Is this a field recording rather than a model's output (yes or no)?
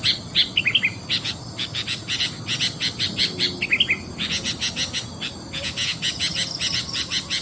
yes